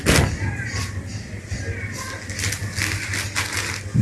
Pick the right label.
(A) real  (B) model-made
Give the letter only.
A